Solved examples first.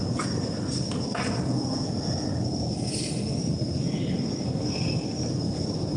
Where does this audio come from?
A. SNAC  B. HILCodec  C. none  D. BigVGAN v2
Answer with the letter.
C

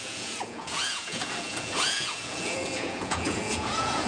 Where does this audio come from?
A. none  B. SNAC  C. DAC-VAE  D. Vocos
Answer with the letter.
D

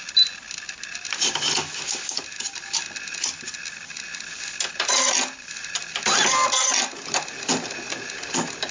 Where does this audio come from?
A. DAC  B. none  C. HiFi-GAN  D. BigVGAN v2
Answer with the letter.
B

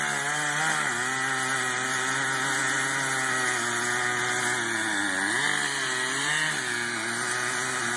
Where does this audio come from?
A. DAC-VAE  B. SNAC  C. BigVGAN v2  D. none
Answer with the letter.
D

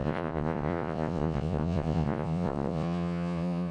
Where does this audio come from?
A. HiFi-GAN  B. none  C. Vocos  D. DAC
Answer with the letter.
C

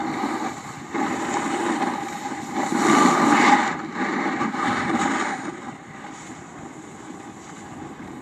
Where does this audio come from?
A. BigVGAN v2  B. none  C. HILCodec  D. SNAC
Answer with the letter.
A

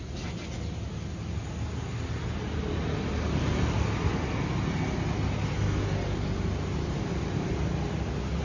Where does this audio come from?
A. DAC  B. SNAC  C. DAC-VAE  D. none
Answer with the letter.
D